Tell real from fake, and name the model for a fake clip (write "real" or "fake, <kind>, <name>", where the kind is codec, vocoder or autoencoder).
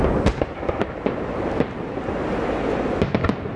real